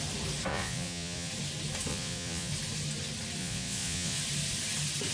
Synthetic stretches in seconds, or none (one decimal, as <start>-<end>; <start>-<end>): 0.5-1.3; 1.9-2.5; 3.4-4.2